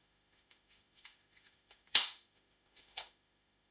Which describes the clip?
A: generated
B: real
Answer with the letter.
A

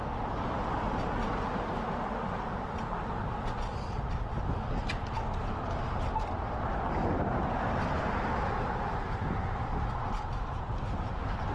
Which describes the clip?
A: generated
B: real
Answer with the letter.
B